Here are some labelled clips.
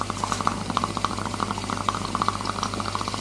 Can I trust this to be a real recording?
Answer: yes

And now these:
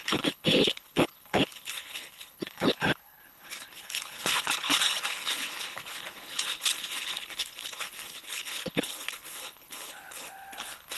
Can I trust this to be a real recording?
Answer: no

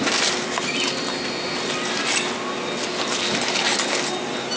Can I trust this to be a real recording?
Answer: yes